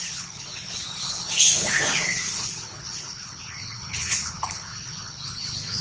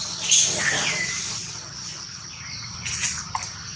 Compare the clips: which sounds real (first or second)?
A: second